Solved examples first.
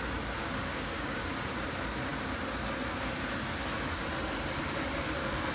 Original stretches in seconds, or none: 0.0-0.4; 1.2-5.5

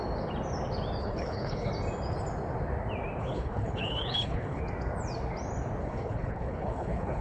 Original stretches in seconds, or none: 0.0-1.0; 1.7-3.2; 4.6-5.8

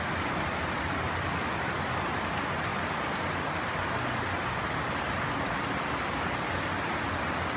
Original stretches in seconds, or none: 0.0-7.6

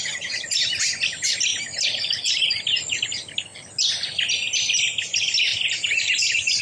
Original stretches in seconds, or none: 0.0-1.5; 2.4-5.5

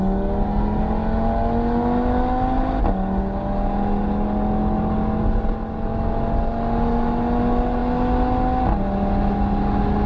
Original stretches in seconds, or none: 0.0-10.1